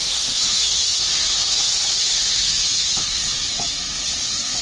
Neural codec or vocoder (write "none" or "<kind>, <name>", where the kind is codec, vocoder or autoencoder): autoencoder, DAC-VAE